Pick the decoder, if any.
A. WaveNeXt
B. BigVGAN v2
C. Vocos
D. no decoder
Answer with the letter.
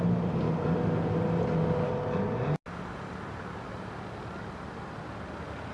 D